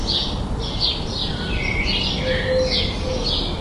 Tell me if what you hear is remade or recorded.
recorded